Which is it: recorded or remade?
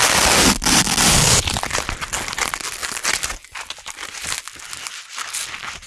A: recorded